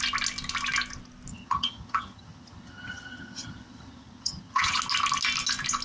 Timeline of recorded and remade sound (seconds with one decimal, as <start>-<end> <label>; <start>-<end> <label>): 0.0-1.3 recorded; 1.3-4.8 remade; 4.8-5.8 recorded